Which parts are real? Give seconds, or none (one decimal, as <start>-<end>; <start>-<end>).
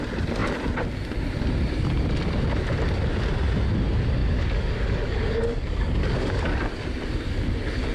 0.0-4.2; 6.7-7.9